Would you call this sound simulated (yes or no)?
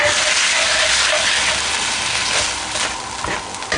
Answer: no